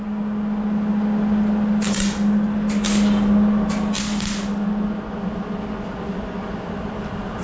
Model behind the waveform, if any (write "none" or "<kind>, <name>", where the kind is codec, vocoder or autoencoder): none